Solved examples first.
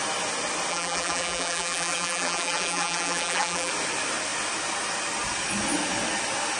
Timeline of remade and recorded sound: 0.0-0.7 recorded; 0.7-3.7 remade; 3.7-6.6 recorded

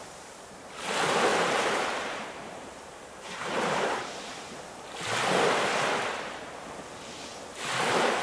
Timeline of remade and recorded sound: 0.0-0.6 remade; 0.6-1.3 recorded; 1.3-4.7 remade; 4.7-8.2 recorded

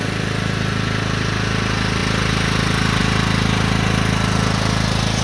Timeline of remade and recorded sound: 0.0-5.2 recorded